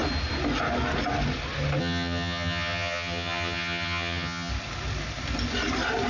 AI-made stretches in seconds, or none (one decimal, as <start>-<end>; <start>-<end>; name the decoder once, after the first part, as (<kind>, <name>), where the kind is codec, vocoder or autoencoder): 1.8-4.5 (vocoder, HiFi-GAN)